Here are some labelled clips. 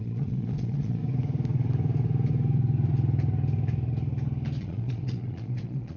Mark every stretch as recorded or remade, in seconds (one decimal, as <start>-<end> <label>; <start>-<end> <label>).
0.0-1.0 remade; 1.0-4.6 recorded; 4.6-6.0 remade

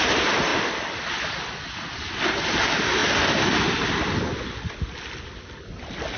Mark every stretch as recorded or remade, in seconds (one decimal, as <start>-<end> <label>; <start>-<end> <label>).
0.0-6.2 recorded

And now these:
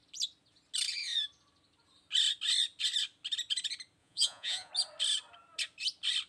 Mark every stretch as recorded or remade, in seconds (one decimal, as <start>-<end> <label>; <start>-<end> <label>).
0.0-4.0 recorded; 4.0-4.7 remade; 4.7-6.3 recorded

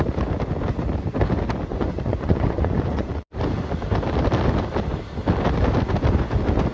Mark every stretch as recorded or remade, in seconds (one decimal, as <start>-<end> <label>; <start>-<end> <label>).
0.0-1.7 recorded; 1.7-3.4 remade; 3.4-6.7 recorded